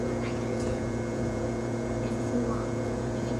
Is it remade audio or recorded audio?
remade